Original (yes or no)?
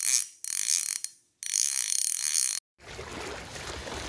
yes